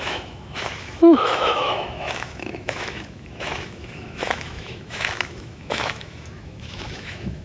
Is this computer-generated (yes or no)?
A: yes